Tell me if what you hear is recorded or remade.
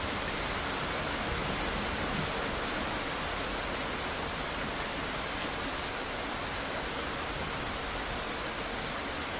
recorded